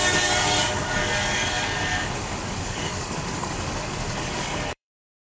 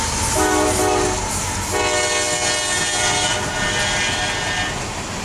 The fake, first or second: first